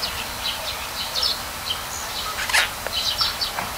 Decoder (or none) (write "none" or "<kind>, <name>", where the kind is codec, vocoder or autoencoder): none